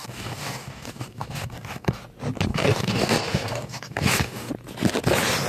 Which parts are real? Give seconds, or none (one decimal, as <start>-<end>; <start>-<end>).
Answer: 2.0-2.5; 4.5-5.5